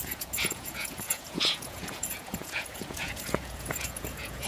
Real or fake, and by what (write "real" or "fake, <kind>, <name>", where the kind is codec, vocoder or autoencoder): fake, vocoder, Vocos